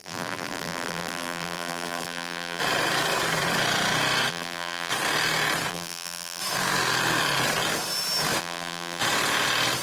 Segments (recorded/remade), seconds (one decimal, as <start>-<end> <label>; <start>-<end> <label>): 0.0-2.6 remade; 2.6-4.3 recorded; 4.3-4.9 remade; 4.9-5.7 recorded; 5.7-6.4 remade; 6.4-8.4 recorded; 8.4-9.0 remade; 9.0-9.8 recorded